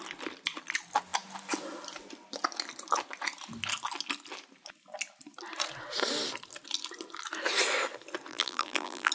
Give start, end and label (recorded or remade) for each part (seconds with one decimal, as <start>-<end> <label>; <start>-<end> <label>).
0.0-8.3 recorded; 8.3-9.1 remade